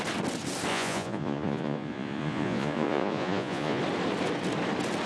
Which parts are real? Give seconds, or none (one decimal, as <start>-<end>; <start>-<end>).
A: 0.0-0.7; 3.8-5.1